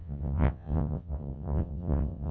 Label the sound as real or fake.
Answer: fake